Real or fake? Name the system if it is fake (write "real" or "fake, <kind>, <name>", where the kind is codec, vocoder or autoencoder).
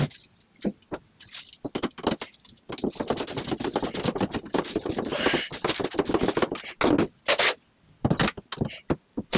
real